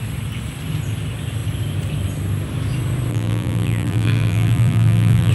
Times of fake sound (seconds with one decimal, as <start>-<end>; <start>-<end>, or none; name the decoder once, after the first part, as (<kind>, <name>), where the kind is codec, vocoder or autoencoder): 3.1-5.3 (vocoder, BigVGAN v2)